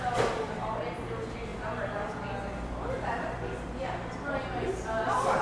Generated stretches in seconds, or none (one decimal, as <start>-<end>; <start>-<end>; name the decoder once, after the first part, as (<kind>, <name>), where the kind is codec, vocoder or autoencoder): none